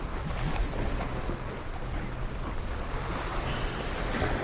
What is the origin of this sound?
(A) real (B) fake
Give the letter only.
A